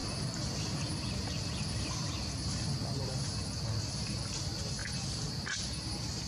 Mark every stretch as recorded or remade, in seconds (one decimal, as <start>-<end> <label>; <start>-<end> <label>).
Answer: 0.0-6.3 recorded